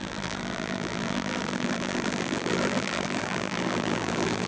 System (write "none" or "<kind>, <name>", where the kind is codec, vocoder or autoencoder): vocoder, BigVGAN v2